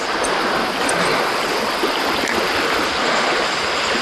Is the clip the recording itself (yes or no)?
yes